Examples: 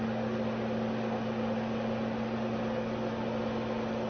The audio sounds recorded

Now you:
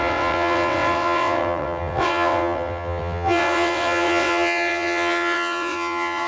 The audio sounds remade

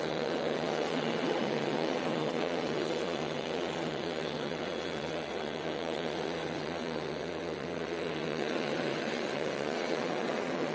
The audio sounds remade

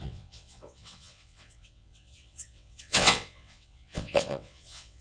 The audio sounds remade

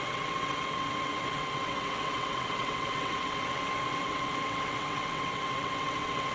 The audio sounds remade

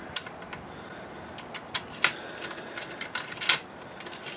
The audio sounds recorded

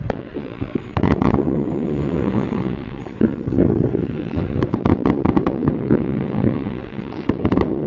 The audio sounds remade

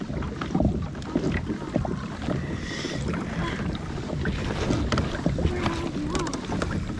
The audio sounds recorded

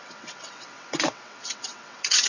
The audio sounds remade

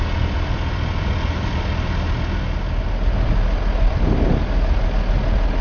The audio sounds recorded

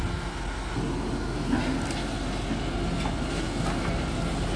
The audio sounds recorded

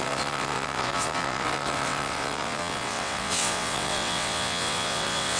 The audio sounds remade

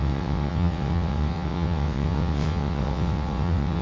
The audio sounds remade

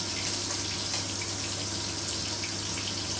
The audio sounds recorded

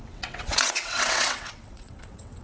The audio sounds remade